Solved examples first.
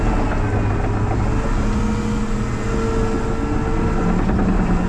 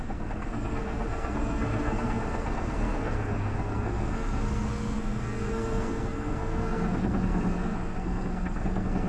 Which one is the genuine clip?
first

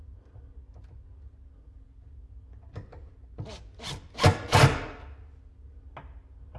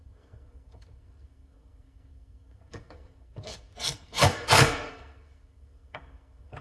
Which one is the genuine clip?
first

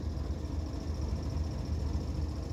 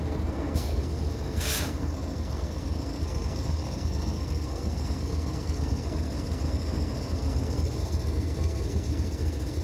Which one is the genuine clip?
first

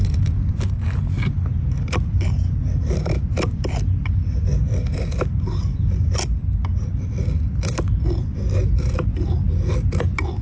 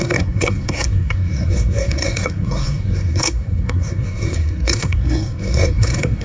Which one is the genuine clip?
first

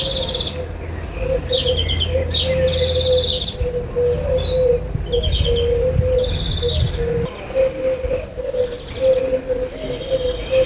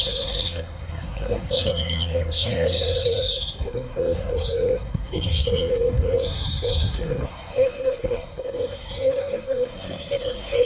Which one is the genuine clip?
first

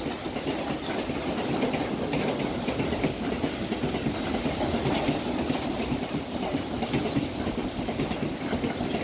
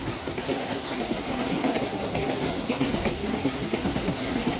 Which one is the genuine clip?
first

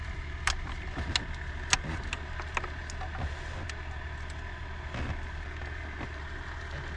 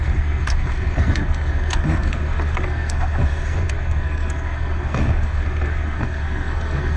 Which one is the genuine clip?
first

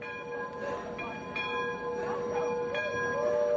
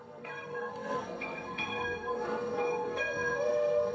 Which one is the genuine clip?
first